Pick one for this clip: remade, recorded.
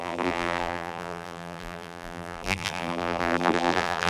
remade